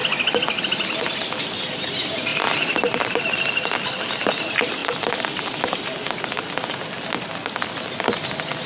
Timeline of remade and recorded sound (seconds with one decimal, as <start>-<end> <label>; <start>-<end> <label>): 0.0-0.6 recorded; 0.6-4.8 remade; 4.8-6.2 recorded; 6.2-8.7 remade

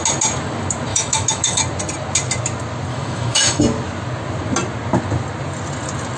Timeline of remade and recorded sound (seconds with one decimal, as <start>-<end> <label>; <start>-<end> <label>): 0.0-0.9 recorded; 0.9-1.6 remade; 1.6-2.9 recorded; 2.9-3.6 remade; 3.6-6.2 recorded

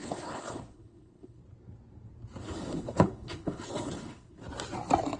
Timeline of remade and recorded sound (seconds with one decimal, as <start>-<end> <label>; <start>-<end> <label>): 0.0-1.4 remade; 1.4-2.4 recorded; 2.4-4.4 remade; 4.4-5.2 recorded